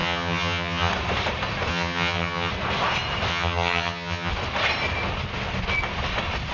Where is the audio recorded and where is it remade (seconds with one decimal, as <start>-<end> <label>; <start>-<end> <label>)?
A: 0.0-0.9 remade; 0.9-1.7 recorded; 1.7-2.5 remade; 2.5-3.3 recorded; 3.3-4.3 remade; 4.3-6.5 recorded